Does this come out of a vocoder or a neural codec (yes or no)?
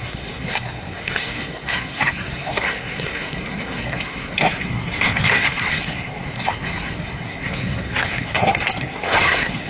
yes